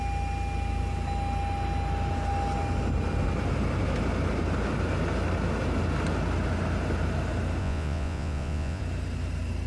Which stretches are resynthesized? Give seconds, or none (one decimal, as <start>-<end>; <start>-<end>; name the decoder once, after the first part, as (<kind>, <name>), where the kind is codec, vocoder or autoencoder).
7.6-8.8 (vocoder, Vocos)